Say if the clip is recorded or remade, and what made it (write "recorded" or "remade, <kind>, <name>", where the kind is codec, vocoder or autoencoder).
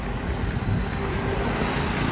remade, vocoder, BigVGAN v2